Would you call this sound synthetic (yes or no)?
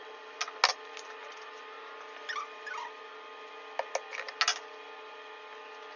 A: no